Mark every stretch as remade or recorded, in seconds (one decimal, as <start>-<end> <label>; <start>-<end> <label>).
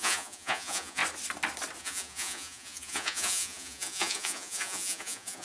0.0-1.0 remade; 1.0-1.8 recorded; 1.8-5.4 remade